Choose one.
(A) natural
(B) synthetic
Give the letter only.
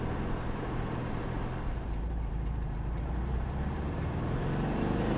B